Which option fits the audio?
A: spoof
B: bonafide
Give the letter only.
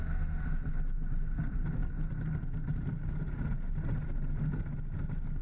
B